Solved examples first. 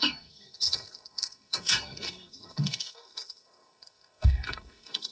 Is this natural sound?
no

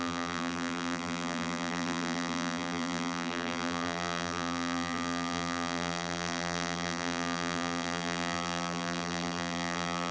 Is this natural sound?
no